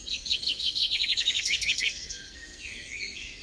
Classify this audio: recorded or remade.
remade